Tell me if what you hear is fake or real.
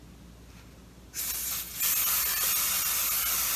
real